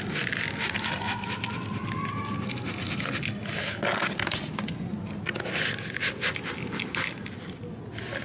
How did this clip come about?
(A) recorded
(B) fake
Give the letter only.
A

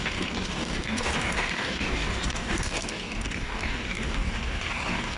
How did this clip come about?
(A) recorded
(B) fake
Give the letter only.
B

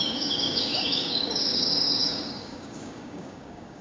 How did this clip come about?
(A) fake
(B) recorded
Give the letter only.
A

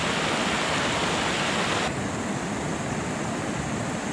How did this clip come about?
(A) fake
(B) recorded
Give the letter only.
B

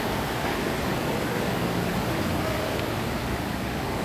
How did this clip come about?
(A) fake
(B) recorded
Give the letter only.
A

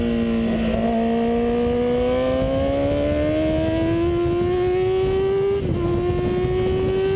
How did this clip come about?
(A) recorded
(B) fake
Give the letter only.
A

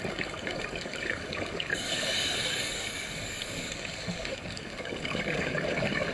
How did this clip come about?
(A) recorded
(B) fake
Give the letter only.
B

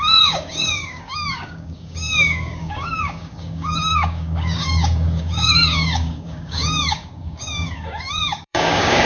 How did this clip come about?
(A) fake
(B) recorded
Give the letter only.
A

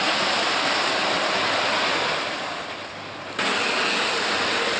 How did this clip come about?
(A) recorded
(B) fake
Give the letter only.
A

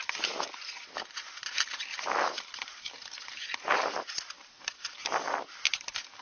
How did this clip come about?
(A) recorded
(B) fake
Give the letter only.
A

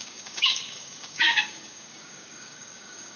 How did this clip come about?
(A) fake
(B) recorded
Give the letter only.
A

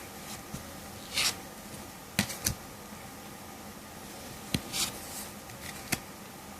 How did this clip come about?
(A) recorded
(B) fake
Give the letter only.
A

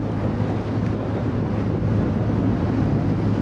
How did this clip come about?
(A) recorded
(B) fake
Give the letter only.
A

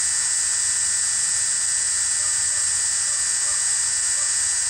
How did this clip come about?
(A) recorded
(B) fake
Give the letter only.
A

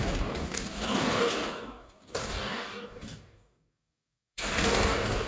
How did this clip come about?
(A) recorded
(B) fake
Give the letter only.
B